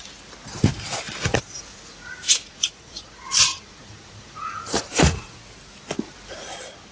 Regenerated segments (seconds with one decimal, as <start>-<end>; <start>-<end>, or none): 1.7-5.4